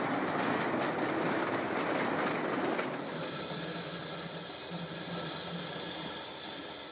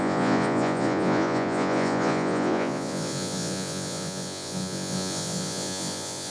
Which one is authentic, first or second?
first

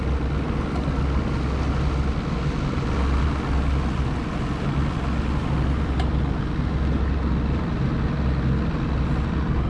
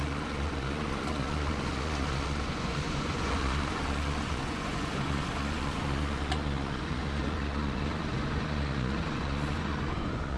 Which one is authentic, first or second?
first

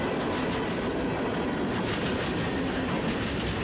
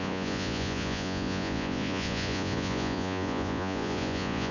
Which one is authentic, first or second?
first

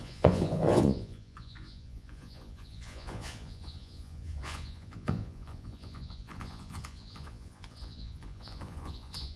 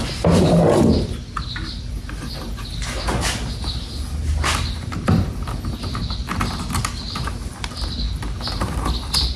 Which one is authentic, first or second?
second